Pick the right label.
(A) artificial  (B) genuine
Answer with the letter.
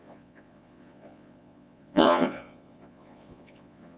A